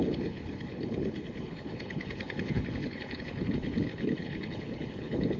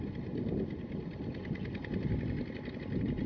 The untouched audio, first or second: second